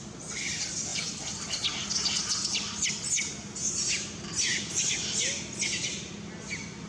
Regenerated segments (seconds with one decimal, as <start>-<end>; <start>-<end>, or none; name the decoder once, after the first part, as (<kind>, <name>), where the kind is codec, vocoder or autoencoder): 0.9-1.5 (vocoder, BigVGAN v2); 4.5-5.2